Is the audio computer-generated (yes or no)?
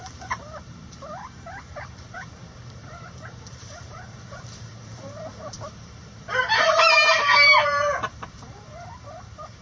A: yes